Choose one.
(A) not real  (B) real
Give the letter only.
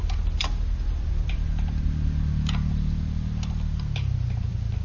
B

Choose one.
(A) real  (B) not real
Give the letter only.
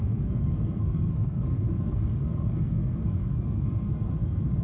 B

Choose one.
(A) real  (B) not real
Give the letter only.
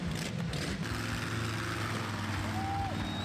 A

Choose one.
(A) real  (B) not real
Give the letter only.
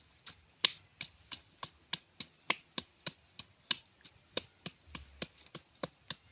A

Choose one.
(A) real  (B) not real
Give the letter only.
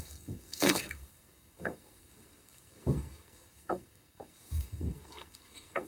B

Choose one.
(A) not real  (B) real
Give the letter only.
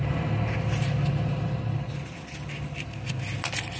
B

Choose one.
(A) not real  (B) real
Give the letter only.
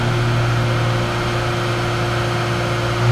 B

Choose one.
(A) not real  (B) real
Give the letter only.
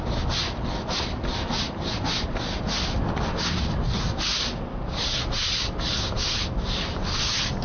B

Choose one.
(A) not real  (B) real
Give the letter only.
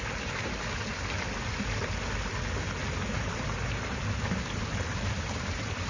B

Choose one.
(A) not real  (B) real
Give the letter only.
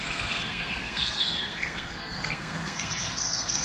A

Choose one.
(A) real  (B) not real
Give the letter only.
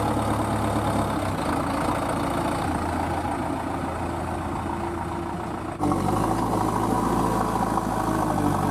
A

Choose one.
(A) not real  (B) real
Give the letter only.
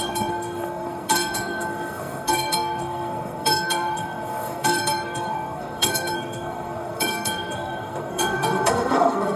A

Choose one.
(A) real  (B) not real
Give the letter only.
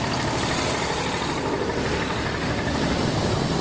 A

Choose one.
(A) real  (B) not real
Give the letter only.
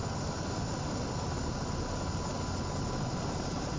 A